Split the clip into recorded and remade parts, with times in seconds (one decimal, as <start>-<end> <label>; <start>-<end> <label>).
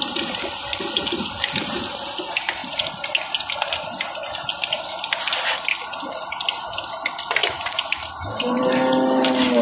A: 0.0-7.4 recorded; 7.4-8.6 remade; 8.6-9.6 recorded